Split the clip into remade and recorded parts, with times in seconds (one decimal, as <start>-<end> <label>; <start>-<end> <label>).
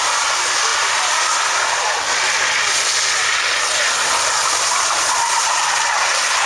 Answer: 0.0-6.5 recorded